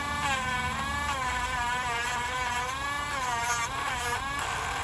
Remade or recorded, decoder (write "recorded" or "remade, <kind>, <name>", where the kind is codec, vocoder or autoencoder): recorded